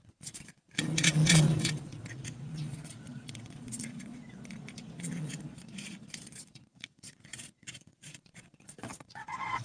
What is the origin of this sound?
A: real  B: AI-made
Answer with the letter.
B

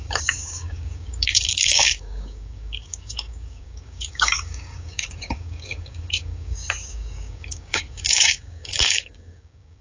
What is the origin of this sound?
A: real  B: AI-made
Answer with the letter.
B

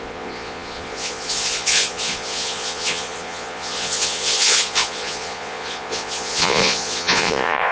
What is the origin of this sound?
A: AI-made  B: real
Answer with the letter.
A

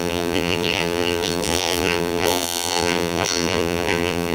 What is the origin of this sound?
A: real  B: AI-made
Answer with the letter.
B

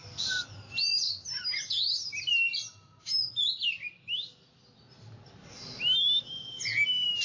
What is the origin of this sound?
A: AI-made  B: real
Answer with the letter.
B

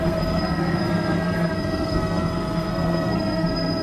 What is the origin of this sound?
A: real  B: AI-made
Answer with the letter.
B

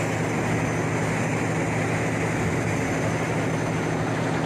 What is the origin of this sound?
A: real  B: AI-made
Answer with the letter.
A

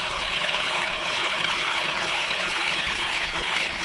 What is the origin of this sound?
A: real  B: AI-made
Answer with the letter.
B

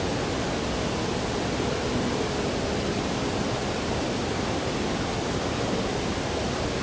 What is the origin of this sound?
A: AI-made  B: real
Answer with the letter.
A